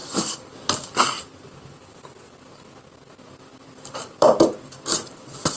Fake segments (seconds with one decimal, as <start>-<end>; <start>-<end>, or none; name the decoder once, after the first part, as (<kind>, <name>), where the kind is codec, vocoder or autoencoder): 0.0-1.3 (vocoder, BigVGAN v2); 3.5-5.6